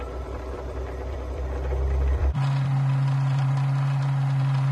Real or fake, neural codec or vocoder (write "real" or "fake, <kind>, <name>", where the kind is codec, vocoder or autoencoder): fake, vocoder, BigVGAN v2